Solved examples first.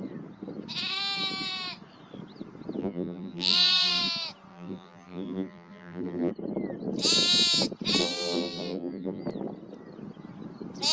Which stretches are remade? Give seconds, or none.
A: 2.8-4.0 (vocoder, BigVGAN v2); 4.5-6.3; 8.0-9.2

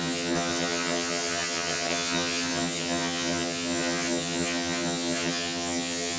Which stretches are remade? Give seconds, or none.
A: 0.0-6.2 (vocoder, HiFi-GAN)

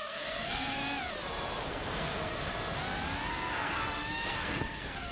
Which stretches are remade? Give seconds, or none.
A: 0.0-0.8 (codec, SNAC); 1.7-2.5; 3.3-5.1

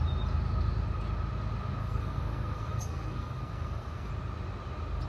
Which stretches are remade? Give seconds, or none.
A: 1.8-4.1 (codec, SNAC)

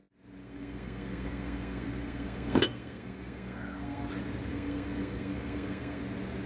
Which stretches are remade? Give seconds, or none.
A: 0.4-4.1 (codec, SNAC); 4.5-6.0

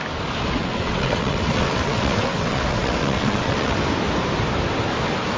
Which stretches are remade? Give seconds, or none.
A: 0.6-3.8 (vocoder, WaveNeXt)

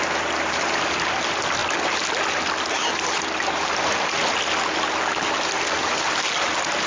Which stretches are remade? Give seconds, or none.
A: none

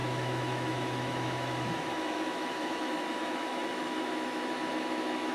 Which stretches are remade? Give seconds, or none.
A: 0.0-5.3 (autoencoder, DAC-VAE)